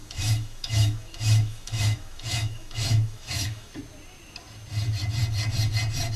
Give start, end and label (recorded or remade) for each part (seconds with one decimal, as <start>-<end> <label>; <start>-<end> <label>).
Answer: 0.0-3.7 remade; 3.7-6.2 recorded